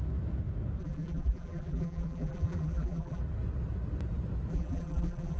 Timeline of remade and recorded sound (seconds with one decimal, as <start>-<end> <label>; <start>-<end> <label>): 0.0-0.8 recorded; 0.8-3.2 remade; 3.2-4.5 recorded; 4.5-5.4 remade